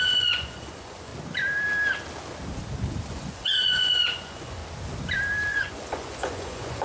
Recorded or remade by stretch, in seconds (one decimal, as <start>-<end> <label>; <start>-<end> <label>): 0.0-1.1 remade; 1.1-3.1 recorded; 3.1-4.6 remade; 4.6-5.5 recorded; 5.5-6.8 remade